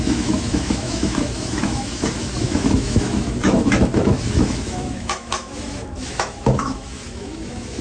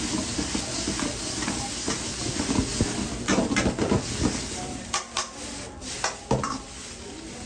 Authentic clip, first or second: second